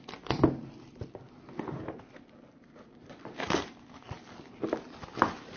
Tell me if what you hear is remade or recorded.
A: remade